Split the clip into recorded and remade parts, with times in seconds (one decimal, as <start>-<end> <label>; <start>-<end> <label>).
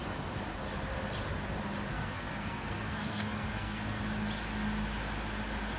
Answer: 0.0-1.9 recorded; 1.9-4.0 remade; 4.0-5.8 recorded